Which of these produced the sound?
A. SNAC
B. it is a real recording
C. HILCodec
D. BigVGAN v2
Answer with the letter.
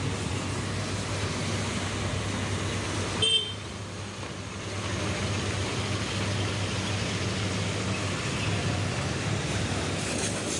B